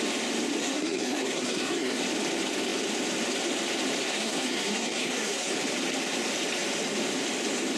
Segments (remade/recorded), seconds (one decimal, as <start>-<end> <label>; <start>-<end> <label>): 0.0-0.6 recorded; 0.6-2.0 remade; 2.0-4.1 recorded; 4.1-5.5 remade; 5.5-7.8 recorded